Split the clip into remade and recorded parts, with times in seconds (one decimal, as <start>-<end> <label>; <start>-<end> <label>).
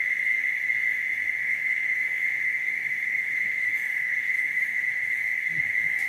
0.0-1.4 recorded; 1.4-5.1 remade; 5.1-6.1 recorded